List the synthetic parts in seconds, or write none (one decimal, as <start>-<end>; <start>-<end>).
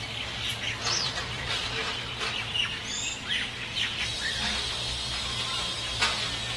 0.8-2.5